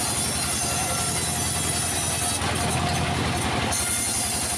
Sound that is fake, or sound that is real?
real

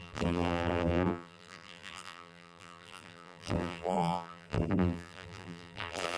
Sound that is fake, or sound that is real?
fake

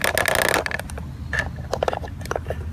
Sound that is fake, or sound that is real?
real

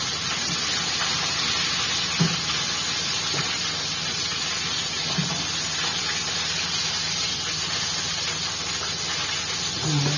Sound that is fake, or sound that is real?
real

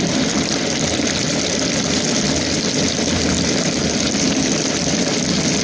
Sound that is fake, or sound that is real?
fake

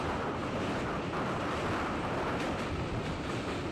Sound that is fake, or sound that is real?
fake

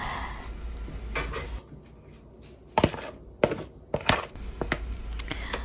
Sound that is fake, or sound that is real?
real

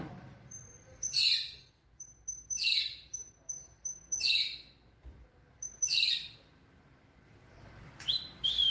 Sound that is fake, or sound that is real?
fake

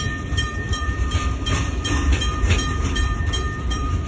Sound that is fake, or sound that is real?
fake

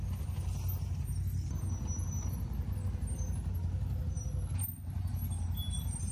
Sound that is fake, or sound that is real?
real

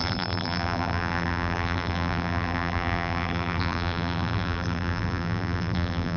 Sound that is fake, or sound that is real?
fake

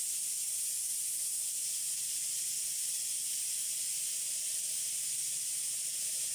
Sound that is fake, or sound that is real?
real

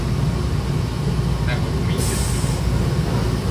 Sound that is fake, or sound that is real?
real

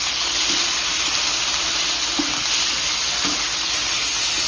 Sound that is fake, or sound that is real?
real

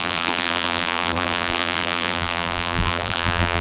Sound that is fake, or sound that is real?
fake